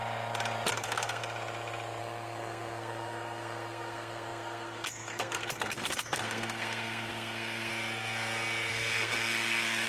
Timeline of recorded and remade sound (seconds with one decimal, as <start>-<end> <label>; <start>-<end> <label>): 0.0-0.7 recorded; 0.7-1.2 remade; 1.2-2.0 recorded; 2.0-7.7 remade; 7.7-8.7 recorded; 8.7-9.9 remade